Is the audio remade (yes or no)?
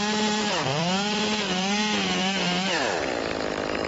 yes